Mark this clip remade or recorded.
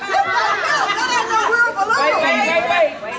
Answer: recorded